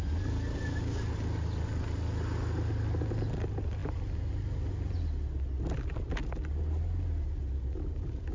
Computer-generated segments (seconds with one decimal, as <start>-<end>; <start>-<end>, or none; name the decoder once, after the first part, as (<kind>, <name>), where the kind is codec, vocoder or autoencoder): none